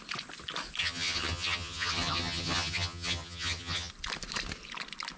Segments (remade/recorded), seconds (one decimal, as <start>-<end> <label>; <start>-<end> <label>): 0.0-0.8 recorded; 0.8-3.9 remade; 3.9-5.2 recorded